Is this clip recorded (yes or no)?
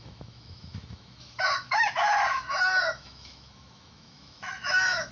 no